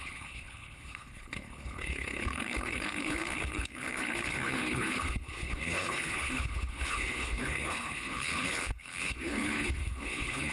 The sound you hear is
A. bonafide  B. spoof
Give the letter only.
B